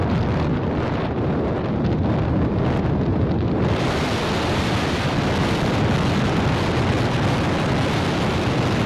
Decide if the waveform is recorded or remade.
recorded